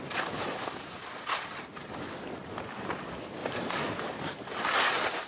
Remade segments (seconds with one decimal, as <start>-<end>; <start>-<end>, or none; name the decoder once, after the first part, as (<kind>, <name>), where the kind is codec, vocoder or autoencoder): 3.4-4.2 (vocoder, BigVGAN v2)